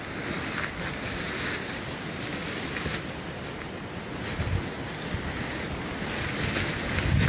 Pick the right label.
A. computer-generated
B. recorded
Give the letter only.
B